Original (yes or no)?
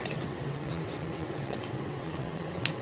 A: no